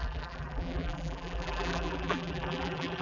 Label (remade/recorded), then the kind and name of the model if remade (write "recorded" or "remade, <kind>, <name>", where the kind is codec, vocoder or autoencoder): remade, vocoder, BigVGAN v2